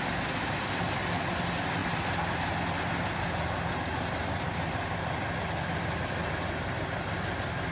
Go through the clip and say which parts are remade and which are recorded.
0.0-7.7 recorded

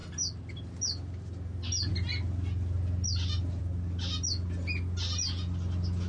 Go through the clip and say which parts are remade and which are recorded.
0.0-6.1 recorded

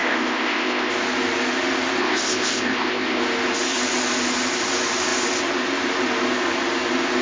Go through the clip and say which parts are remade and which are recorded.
0.0-0.9 remade; 0.9-2.0 recorded; 2.0-3.2 remade; 3.2-7.2 recorded

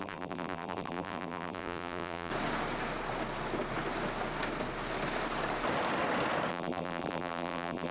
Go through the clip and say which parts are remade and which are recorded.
0.0-2.3 remade; 2.3-6.5 recorded; 6.5-7.9 remade

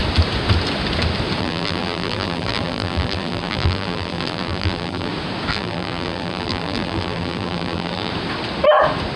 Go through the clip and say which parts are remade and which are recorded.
0.0-1.4 recorded; 1.4-5.1 remade; 5.1-5.5 recorded; 5.5-8.1 remade; 8.1-9.2 recorded

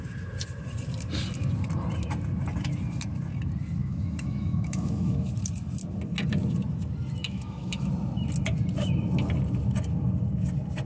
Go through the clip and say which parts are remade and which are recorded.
0.0-3.8 recorded; 3.8-5.3 remade; 5.3-7.2 recorded; 7.2-7.9 remade; 7.9-10.9 recorded

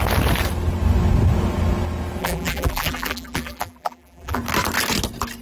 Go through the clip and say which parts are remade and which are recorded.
0.0-2.2 recorded; 2.2-4.4 remade; 4.4-5.4 recorded

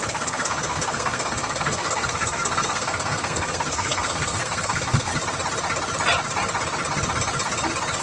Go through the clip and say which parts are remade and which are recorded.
0.0-5.1 remade; 5.1-8.0 recorded